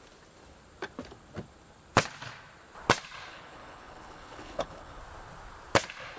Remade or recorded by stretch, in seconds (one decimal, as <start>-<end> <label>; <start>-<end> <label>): 0.0-3.3 recorded; 3.3-5.0 remade; 5.0-6.2 recorded